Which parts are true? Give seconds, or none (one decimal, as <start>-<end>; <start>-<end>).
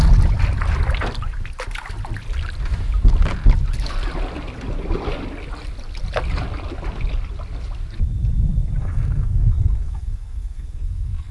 0.0-8.8